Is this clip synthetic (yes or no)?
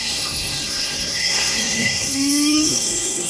yes